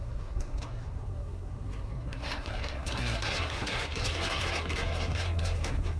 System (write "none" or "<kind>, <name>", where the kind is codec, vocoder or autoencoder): codec, SNAC